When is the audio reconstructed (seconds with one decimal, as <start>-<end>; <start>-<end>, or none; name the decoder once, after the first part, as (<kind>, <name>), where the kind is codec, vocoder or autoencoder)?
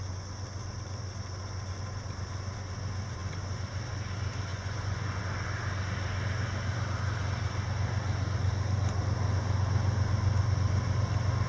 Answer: 4.5-5.2 (vocoder, Vocos)